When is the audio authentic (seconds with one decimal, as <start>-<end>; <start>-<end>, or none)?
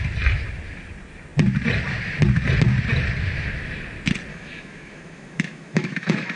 0.0-4.3